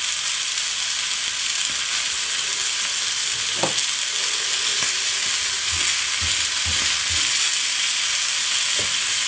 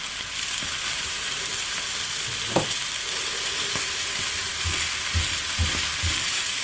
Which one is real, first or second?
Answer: first